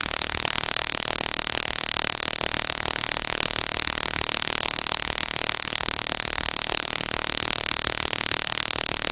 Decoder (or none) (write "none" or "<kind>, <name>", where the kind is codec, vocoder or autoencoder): codec, SNAC